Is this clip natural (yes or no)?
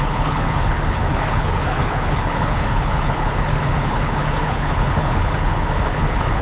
no